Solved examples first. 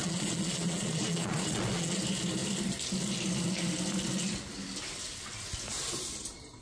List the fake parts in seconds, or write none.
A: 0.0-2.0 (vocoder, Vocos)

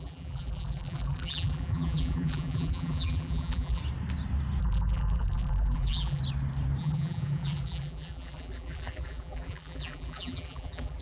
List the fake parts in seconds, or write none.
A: 0.0-3.8 (vocoder, BigVGAN v2); 4.6-6.2; 6.8-11.0

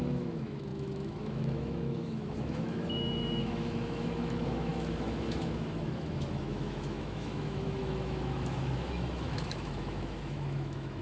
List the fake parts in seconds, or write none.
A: 0.0-11.0 (autoencoder, DAC-VAE)

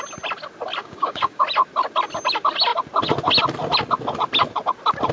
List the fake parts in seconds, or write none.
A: 0.8-1.4 (codec, DAC)